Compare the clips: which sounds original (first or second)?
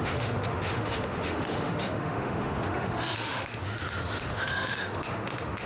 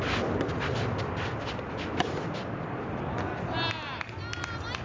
second